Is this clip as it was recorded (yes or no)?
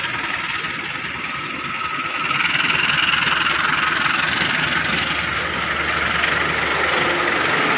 yes